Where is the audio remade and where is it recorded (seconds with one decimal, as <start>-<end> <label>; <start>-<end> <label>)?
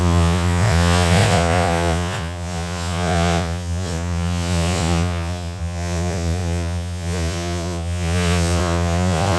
0.0-9.4 remade